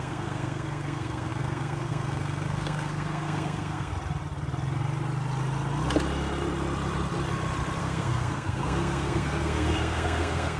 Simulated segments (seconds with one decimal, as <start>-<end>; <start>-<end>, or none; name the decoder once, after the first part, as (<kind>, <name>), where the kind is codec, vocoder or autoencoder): 0.0-3.9 (codec, SNAC); 7.8-10.6